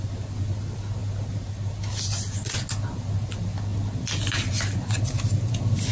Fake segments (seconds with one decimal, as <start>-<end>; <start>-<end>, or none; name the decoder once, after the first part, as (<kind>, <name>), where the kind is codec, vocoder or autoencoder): none